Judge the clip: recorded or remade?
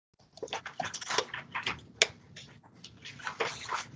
recorded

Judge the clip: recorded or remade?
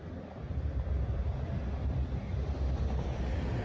recorded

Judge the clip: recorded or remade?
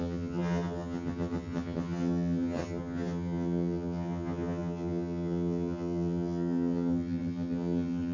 remade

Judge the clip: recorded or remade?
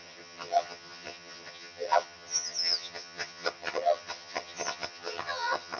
remade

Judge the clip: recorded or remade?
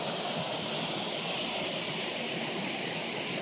recorded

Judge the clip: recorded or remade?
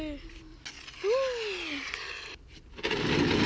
recorded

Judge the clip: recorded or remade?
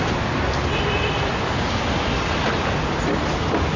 recorded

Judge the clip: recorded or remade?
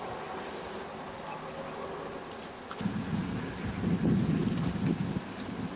recorded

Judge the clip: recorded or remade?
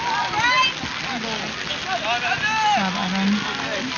recorded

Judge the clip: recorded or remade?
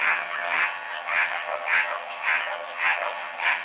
remade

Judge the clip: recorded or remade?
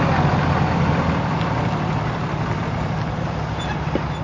recorded